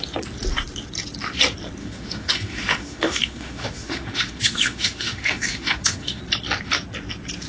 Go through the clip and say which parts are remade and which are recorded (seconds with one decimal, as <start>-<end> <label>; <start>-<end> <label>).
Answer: 0.0-1.8 recorded; 1.8-6.2 remade; 6.2-7.5 recorded